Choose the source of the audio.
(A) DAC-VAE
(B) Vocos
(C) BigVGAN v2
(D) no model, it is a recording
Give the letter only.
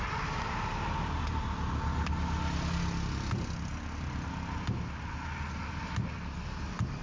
D